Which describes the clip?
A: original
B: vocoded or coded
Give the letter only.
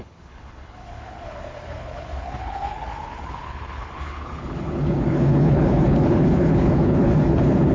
B